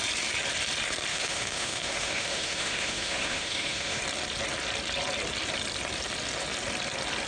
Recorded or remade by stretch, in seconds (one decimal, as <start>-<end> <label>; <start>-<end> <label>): 0.0-1.1 recorded; 1.1-4.0 remade; 4.0-7.3 recorded